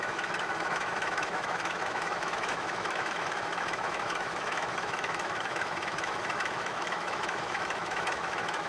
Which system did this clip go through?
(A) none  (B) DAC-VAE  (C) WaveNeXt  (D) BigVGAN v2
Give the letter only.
B